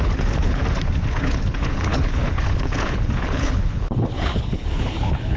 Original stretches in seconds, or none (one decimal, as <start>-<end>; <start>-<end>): 0.6-1.1